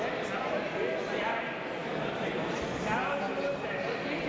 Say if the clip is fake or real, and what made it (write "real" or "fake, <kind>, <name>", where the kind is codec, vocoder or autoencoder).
real